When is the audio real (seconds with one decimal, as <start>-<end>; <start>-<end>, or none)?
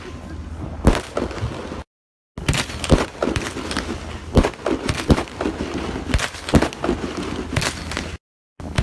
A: 0.0-8.8